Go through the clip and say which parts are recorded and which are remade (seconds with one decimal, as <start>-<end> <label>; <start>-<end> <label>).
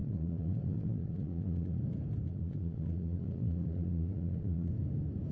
0.0-1.8 remade; 1.8-2.3 recorded; 2.3-4.7 remade; 4.7-5.3 recorded